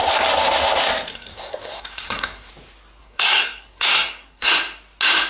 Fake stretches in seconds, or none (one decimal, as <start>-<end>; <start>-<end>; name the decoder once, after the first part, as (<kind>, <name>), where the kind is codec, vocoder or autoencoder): 1.1-2.5 (codec, SNAC); 3.0-4.5